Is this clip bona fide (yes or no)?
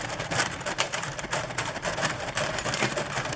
no